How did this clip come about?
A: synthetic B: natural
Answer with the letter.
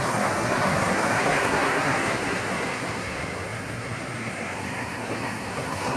A